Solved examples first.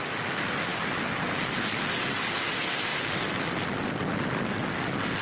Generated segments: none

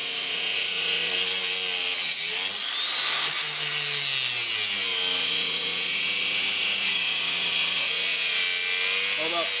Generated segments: 0.0-1.1; 5.2-8.4

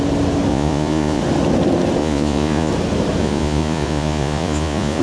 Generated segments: 0.5-1.2; 2.0-2.7; 3.2-5.0